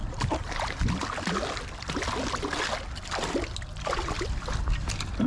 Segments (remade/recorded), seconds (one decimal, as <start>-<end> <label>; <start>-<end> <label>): 0.0-0.9 remade; 0.9-5.3 recorded